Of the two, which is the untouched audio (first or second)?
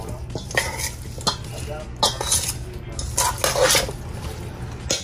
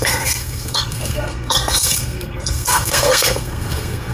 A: first